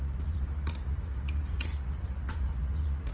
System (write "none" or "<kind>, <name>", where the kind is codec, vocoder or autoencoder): vocoder, Vocos